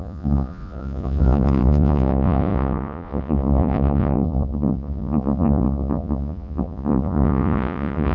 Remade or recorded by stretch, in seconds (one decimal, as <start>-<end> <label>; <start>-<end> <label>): 0.0-8.1 remade